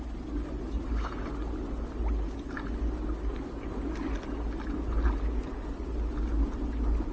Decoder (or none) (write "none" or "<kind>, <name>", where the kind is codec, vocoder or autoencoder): none